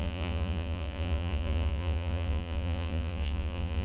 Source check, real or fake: fake